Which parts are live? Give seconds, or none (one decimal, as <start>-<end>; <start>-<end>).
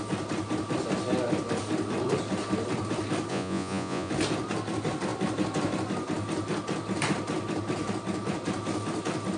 0.0-3.3; 4.1-9.4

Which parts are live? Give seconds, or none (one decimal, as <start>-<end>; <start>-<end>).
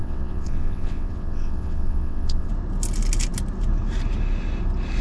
2.5-5.0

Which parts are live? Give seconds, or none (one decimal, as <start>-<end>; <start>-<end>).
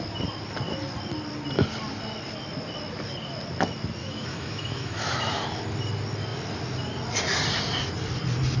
0.0-4.0; 5.4-8.6